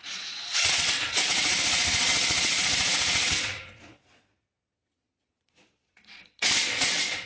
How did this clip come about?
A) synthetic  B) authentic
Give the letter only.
A